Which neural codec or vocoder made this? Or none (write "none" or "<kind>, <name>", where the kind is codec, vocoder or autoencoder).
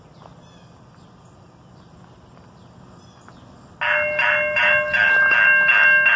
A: none